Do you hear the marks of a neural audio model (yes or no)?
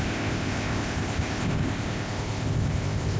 yes